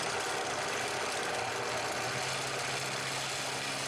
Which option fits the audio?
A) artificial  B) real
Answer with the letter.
B